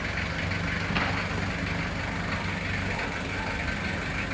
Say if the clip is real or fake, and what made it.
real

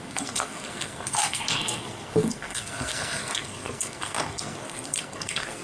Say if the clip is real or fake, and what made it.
fake, codec, SNAC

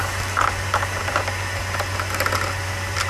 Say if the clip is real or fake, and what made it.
real